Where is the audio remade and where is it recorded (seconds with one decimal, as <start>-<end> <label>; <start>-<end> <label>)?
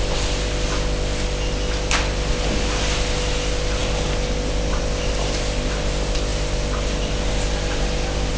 0.0-8.4 recorded